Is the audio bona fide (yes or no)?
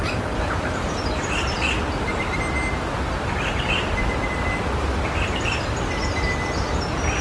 yes